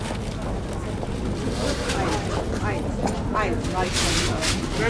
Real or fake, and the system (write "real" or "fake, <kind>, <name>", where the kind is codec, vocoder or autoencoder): real